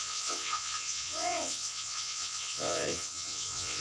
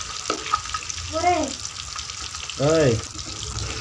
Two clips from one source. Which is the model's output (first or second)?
first